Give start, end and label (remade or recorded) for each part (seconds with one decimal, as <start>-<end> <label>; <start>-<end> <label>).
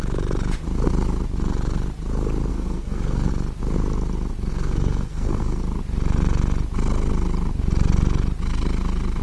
0.0-2.5 recorded; 2.5-3.3 remade; 3.3-4.5 recorded; 4.5-5.6 remade; 5.6-9.2 recorded